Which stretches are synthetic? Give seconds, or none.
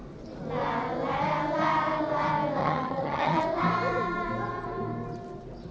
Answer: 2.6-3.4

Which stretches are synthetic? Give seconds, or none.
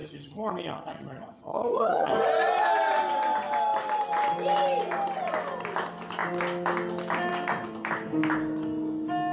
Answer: 0.0-2.1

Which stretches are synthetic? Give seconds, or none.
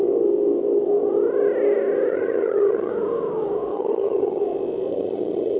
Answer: 2.1-2.9; 3.7-4.4; 4.9-5.6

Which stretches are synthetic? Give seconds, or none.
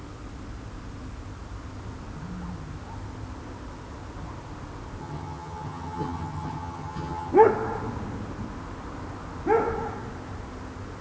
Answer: 5.0-7.3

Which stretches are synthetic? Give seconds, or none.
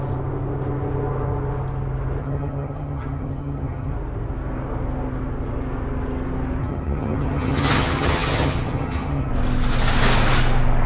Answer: 2.2-3.9; 6.6-9.3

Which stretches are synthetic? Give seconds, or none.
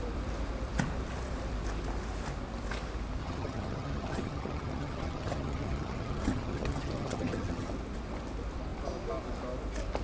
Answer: 3.2-7.7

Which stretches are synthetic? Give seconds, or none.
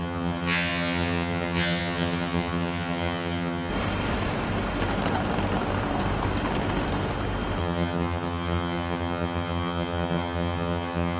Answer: 0.0-3.7; 7.6-11.2